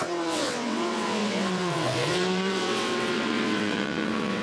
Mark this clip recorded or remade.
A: remade